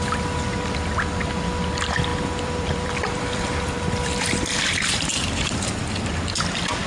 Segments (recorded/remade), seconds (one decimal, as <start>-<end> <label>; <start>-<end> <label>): 0.0-2.1 recorded; 2.1-6.2 remade; 6.2-6.9 recorded